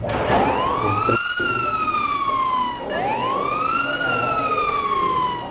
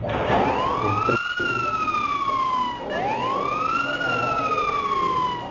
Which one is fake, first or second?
second